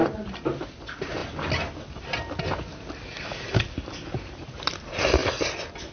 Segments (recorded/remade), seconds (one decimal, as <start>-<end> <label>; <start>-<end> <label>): 0.0-5.9 recorded